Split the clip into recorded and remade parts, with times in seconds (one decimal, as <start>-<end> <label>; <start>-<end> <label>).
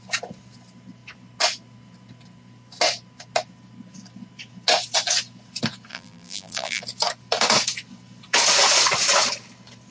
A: 0.0-5.9 recorded; 5.9-6.8 remade; 6.8-9.9 recorded